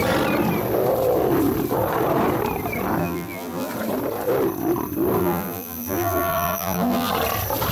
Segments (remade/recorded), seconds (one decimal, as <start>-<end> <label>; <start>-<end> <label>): 0.0-3.0 recorded; 3.0-3.7 remade; 3.7-5.2 recorded; 5.2-7.1 remade; 7.1-7.7 recorded